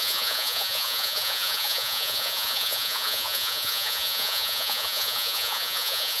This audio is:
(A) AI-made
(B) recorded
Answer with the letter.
A